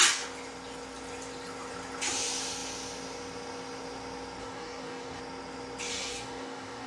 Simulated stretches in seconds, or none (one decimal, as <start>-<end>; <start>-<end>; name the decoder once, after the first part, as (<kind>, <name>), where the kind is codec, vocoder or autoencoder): 4.4-5.2 (codec, DAC); 5.9-6.9